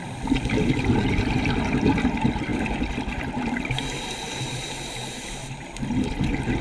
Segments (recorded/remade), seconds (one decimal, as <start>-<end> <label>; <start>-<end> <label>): 0.0-6.6 recorded